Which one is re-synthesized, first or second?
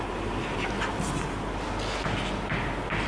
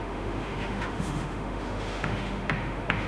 second